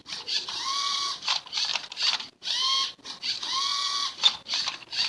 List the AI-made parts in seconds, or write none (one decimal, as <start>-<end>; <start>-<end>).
none